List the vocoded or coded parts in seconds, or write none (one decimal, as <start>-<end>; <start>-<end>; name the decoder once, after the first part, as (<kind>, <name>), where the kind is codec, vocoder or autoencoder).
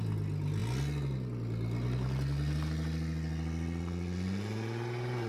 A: none